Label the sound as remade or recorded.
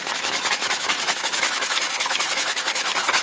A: remade